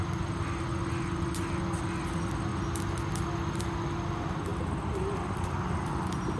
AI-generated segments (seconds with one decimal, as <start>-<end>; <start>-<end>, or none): none